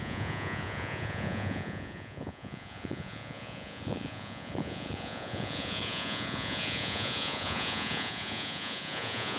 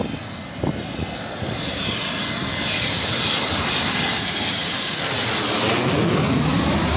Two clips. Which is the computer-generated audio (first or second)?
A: first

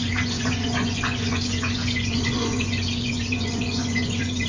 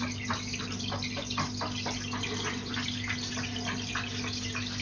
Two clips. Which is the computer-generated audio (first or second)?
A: first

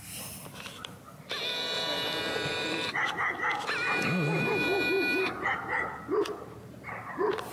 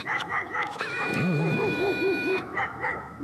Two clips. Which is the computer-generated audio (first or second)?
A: second